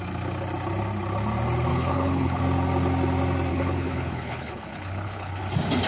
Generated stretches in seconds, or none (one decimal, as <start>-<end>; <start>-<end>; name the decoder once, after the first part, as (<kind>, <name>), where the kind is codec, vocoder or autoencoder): 1.7-2.4 (codec, HILCodec); 3.5-5.4